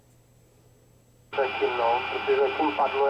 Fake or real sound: real